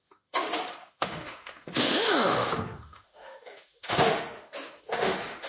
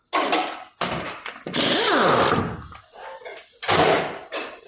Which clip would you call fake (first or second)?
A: first